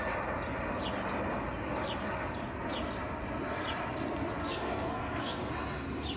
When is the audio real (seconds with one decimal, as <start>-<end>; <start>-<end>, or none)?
0.0-4.4; 5.5-6.2

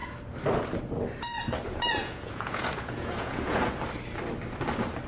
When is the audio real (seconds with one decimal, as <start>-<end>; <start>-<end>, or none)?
0.0-2.0; 3.7-5.1

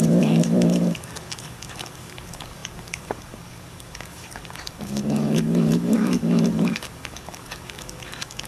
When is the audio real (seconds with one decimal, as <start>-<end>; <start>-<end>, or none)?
none

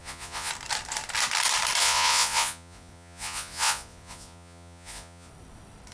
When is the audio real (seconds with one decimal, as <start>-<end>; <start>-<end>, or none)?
0.5-1.8; 5.3-5.9

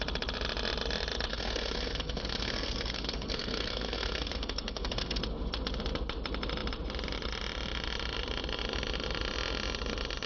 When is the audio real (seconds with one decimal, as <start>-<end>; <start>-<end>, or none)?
0.0-1.3; 5.2-10.3

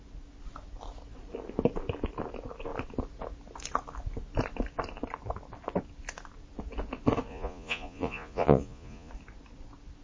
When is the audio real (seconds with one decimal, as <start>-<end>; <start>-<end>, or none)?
0.0-7.3; 9.1-10.0

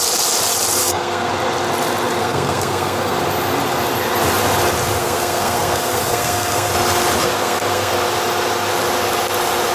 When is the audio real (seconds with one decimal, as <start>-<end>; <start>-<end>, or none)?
0.0-0.8; 1.3-2.2; 3.2-5.0; 6.7-7.2; 7.9-9.7